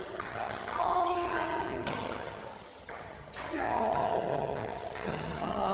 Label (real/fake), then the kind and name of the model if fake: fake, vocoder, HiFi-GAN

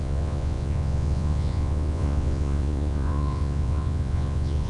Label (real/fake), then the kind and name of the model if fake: fake, vocoder, Vocos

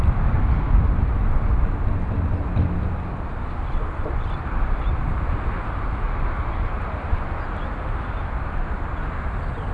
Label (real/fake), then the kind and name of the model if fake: real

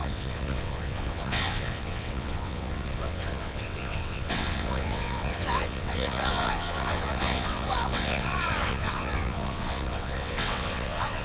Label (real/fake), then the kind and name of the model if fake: fake, vocoder, WaveNeXt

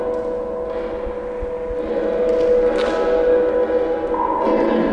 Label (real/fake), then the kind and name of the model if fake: real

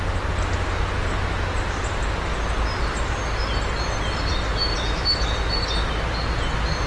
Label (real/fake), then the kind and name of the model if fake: real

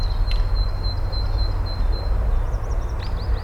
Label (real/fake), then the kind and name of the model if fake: real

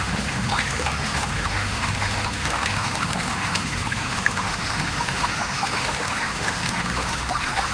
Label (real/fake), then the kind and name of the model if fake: fake, autoencoder, DAC-VAE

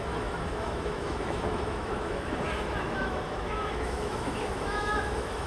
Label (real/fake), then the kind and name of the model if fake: fake, autoencoder, DAC-VAE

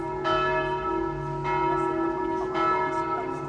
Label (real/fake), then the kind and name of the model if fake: real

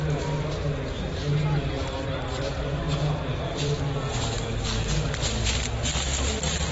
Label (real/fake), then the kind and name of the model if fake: real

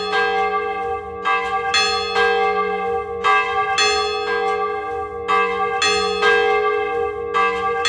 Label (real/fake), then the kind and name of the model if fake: real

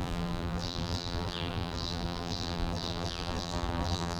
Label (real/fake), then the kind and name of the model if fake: fake, vocoder, BigVGAN v2